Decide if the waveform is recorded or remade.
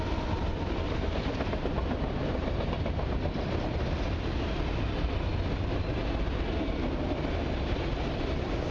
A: recorded